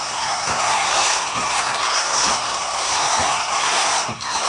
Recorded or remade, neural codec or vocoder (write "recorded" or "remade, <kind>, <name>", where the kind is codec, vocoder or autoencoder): remade, codec, SNAC